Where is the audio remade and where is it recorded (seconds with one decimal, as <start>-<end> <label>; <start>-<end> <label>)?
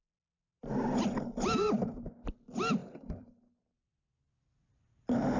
0.0-5.4 recorded